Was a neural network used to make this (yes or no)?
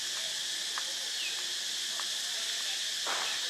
no